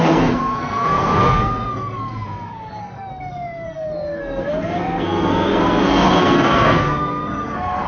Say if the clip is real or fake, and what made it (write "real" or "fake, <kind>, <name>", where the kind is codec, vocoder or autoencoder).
fake, codec, SNAC